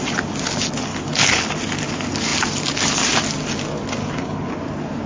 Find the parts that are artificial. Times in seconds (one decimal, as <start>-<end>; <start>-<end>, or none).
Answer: 0.9-1.4; 4.0-4.5